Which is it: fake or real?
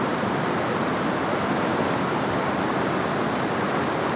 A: real